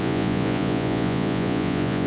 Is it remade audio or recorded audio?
remade